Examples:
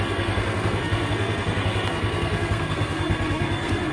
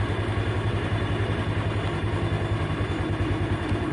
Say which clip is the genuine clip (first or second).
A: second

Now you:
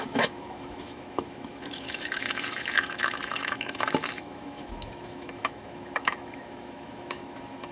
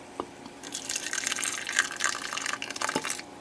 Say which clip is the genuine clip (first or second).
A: second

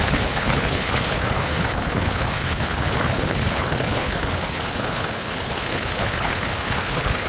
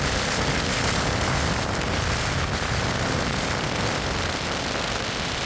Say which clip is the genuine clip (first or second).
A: second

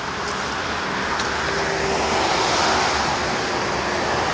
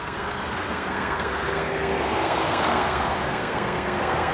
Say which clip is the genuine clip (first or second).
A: first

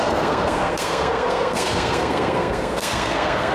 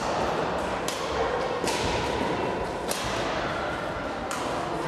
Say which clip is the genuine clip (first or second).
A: second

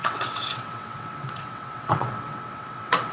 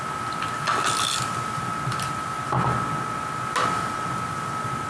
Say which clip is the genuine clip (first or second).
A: second